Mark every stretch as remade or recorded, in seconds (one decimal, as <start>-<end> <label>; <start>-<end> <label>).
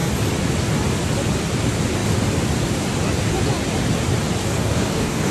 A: 0.0-4.4 recorded; 4.4-5.3 remade